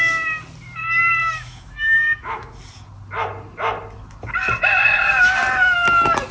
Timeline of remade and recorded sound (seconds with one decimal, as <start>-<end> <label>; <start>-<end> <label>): 0.0-1.2 recorded; 1.2-2.5 remade; 2.5-6.3 recorded